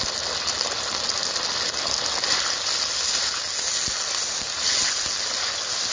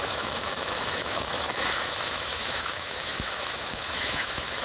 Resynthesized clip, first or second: second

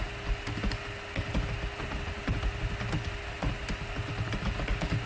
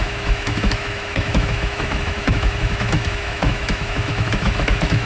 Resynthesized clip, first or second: second